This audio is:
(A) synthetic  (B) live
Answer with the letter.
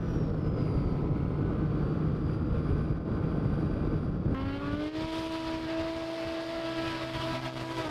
B